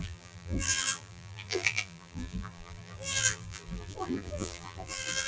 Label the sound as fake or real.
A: fake